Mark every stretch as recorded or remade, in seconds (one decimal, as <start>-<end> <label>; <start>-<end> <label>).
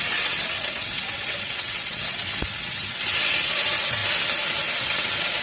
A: 0.0-4.0 remade; 4.0-4.8 recorded; 4.8-5.4 remade